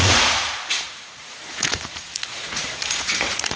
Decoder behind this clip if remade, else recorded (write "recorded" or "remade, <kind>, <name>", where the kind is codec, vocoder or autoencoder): remade, vocoder, Vocos